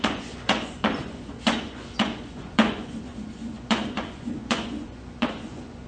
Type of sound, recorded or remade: remade